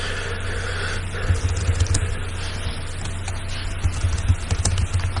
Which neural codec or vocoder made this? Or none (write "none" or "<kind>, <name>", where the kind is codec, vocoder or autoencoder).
none